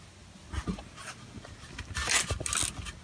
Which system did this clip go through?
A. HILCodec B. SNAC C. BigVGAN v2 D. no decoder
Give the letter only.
D